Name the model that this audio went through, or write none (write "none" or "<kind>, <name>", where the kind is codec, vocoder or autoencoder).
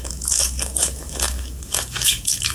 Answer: autoencoder, DAC-VAE